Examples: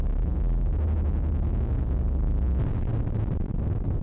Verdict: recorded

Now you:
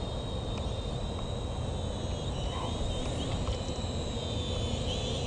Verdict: recorded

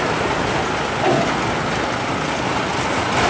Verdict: recorded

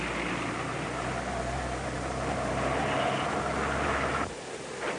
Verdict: recorded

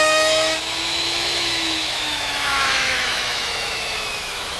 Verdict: remade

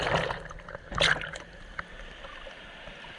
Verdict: recorded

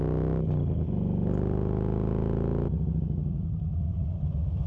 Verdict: recorded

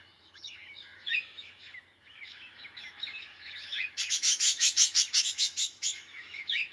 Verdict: remade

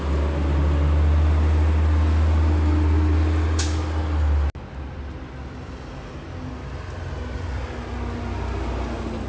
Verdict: recorded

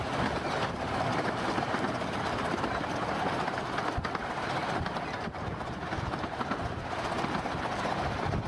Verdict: recorded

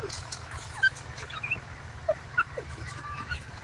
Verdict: remade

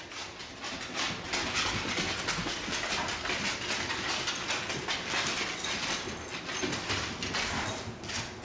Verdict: recorded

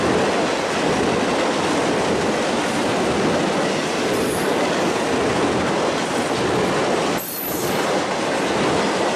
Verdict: recorded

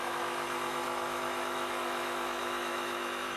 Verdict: remade